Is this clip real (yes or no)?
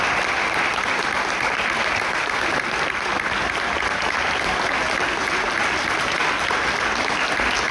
yes